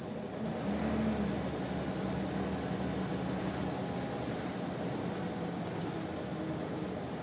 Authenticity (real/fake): real